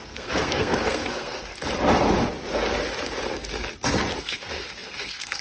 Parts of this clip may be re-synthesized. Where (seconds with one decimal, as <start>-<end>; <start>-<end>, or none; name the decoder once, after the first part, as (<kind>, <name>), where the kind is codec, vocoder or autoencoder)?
0.0-1.5 (codec, SNAC); 4.2-5.4

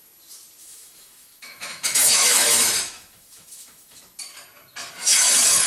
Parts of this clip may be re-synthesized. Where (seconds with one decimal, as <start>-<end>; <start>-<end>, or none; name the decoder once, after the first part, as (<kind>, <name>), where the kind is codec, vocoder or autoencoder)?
0.6-4.0 (autoencoder, DAC-VAE); 5.0-5.7

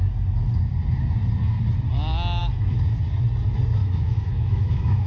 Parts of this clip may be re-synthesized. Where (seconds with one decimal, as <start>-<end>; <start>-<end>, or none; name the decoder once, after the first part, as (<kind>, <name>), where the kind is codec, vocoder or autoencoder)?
3.8-5.1 (autoencoder, DAC-VAE)

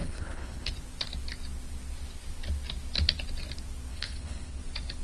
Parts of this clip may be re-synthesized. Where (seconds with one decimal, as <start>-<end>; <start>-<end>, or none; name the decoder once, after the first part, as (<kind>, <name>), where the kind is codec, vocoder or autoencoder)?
0.0-0.7 (codec, HILCodec); 3.9-4.6

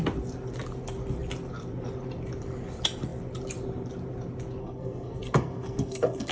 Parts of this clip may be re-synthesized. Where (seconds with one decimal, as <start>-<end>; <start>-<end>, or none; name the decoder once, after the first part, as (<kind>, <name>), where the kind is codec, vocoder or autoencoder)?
4.6-6.3 (codec, SNAC)

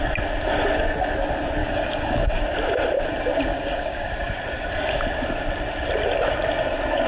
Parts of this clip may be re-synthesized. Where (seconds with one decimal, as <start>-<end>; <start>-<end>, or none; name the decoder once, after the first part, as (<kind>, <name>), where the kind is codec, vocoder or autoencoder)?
1.6-2.4 (codec, DAC); 3.5-4.1

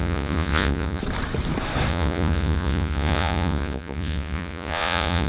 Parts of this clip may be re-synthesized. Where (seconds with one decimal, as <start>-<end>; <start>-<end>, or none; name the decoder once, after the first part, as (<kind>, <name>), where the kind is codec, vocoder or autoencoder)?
0.0-1.0 (vocoder, Vocos); 1.9-5.3